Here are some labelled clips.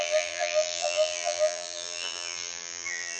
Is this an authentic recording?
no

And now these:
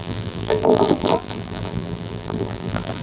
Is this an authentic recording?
no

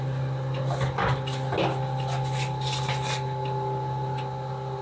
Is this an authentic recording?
yes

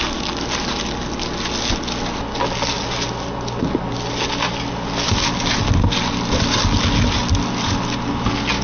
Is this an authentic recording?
yes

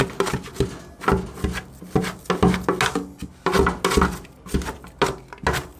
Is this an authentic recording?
yes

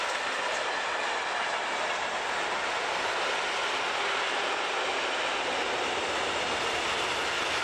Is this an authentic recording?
yes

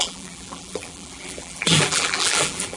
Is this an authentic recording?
no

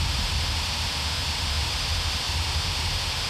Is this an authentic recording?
yes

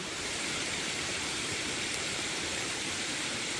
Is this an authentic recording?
no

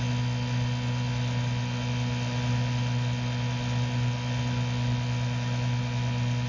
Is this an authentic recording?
yes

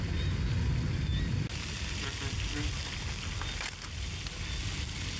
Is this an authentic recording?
yes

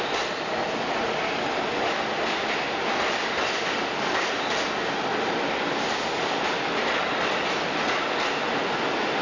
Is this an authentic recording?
no